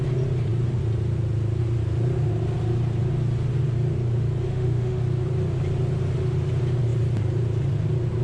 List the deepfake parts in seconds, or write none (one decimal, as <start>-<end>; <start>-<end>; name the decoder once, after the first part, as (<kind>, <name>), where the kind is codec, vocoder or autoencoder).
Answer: 4.5-5.0 (autoencoder, DAC-VAE)